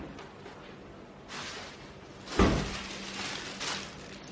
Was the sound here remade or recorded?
recorded